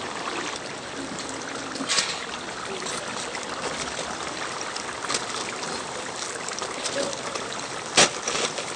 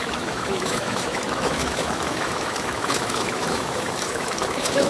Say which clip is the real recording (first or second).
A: first